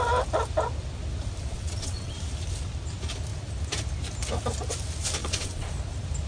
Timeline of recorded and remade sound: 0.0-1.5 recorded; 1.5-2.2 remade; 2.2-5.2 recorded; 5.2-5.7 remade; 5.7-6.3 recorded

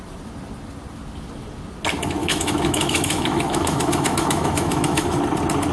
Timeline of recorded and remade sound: 0.0-2.2 recorded; 2.2-5.2 remade; 5.2-5.7 recorded

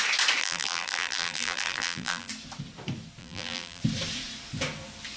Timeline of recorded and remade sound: 0.0-0.4 recorded; 0.4-2.3 remade; 2.3-3.2 recorded; 3.2-3.8 remade; 3.8-5.2 recorded

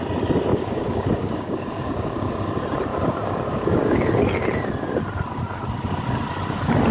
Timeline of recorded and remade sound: 0.0-0.5 recorded; 0.5-2.3 remade; 2.3-2.9 recorded; 2.9-4.0 remade; 4.0-6.9 recorded

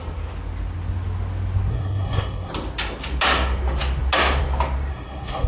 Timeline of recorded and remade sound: 0.0-1.7 recorded; 1.7-2.5 remade; 2.5-4.9 recorded; 4.9-5.5 remade

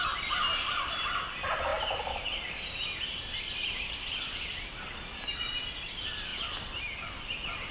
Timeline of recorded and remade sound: 0.0-6.3 remade; 6.3-6.8 recorded; 6.8-7.7 remade